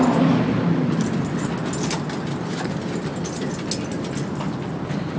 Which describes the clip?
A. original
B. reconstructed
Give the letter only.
A